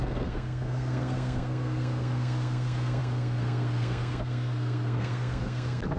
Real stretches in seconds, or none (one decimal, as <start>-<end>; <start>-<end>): none